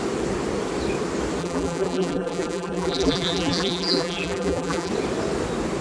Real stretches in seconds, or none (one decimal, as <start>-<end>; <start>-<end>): 0.0-1.4; 4.9-5.8